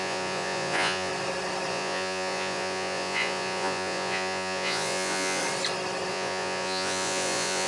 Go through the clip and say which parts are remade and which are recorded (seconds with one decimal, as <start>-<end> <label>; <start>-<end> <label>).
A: 0.0-1.1 remade; 1.1-1.7 recorded; 1.7-5.4 remade; 5.4-6.1 recorded; 6.1-7.7 remade

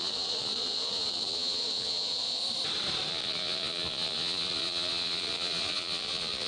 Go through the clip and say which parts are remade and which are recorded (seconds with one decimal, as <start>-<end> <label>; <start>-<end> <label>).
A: 0.0-2.4 remade; 2.4-3.1 recorded; 3.1-6.5 remade

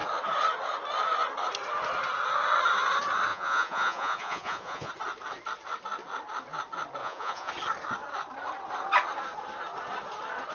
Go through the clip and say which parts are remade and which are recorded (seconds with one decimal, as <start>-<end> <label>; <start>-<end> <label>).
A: 0.0-3.3 recorded; 3.3-4.9 remade; 4.9-7.0 recorded; 7.0-7.5 remade; 7.5-10.5 recorded

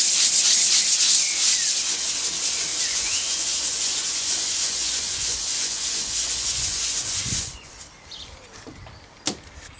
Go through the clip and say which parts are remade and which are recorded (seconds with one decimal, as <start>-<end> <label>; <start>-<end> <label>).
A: 0.0-2.7 recorded; 2.7-7.7 remade; 7.7-9.8 recorded

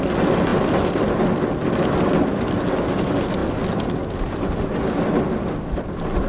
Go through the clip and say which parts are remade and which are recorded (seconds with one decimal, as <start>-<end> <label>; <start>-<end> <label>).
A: 0.0-6.3 recorded

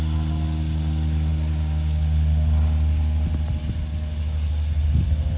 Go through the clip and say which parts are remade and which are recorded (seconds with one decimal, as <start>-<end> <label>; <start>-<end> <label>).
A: 0.0-5.4 recorded